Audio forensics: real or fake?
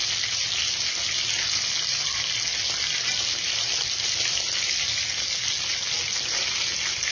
real